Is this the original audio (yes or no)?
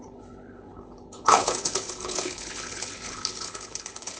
no